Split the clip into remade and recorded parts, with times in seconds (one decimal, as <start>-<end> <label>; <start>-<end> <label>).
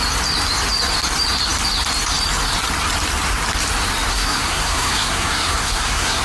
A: 0.0-4.1 recorded; 4.1-6.2 remade